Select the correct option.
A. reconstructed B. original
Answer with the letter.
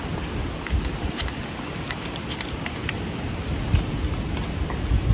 B